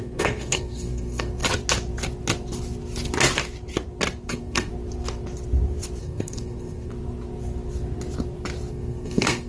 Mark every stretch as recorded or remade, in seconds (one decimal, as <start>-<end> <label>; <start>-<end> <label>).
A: 0.0-1.4 remade; 1.4-4.3 recorded; 4.3-4.7 remade; 4.7-6.0 recorded; 6.0-6.9 remade; 6.9-8.7 recorded; 8.7-9.5 remade